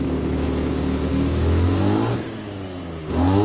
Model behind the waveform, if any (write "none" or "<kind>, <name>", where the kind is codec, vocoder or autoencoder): codec, DAC